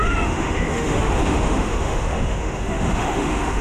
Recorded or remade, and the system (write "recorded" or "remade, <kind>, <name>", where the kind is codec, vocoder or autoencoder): remade, autoencoder, DAC-VAE